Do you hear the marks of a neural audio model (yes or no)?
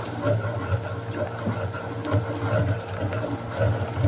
no